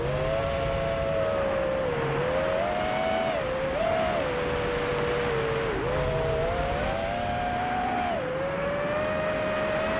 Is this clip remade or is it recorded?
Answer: recorded